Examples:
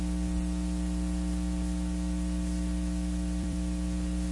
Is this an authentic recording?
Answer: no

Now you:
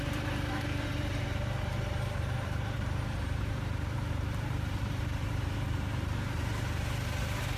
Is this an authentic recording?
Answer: no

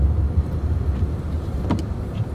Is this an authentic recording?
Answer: no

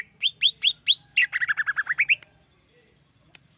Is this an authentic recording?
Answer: yes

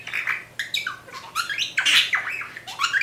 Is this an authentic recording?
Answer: yes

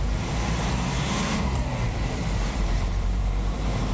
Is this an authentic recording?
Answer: no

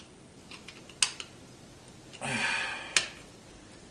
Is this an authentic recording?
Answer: yes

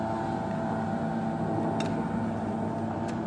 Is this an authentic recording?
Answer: yes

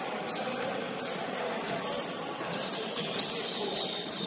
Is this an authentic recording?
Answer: no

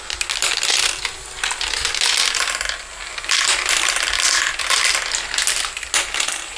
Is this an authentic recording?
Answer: yes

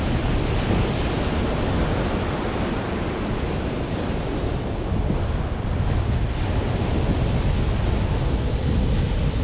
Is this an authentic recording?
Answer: yes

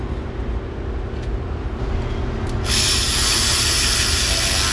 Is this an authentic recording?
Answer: yes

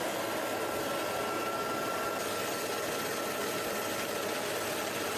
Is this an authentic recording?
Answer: yes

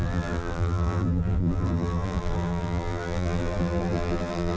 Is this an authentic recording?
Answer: no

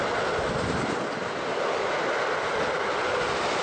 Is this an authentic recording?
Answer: yes